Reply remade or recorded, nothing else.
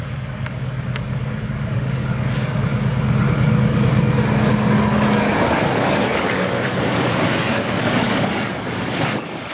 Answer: remade